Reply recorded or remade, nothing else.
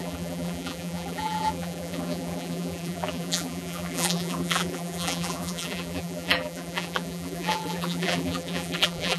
remade